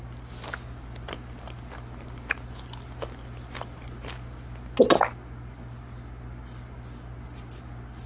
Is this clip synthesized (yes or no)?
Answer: no